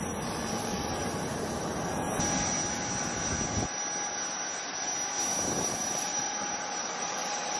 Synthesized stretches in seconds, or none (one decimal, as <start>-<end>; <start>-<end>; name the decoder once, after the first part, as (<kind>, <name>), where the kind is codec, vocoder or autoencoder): 0.0-1.7 (vocoder, BigVGAN v2); 5.6-7.6